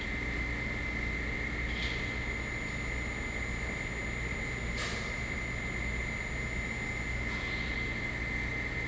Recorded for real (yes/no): yes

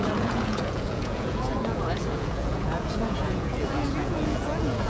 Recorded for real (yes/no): no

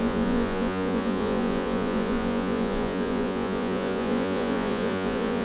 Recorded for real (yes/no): no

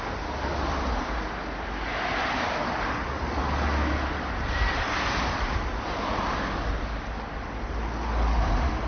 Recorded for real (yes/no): yes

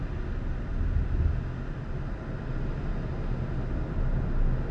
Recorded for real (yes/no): yes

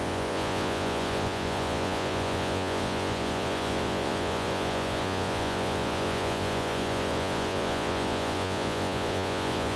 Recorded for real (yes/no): no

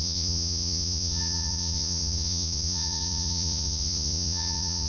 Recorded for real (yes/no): no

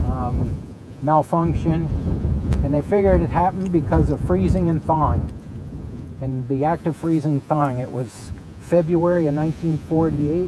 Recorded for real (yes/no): no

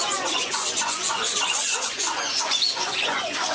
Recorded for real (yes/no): no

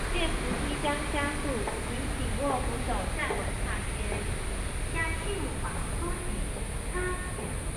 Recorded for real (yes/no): yes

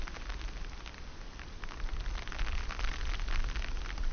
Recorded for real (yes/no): yes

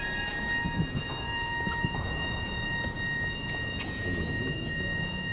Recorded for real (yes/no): no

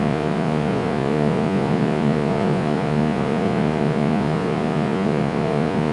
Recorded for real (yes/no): no